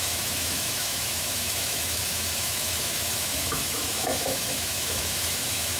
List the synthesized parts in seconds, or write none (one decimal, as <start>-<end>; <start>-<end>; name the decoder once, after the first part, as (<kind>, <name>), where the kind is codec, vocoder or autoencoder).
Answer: 0.0-5.8 (autoencoder, DAC-VAE)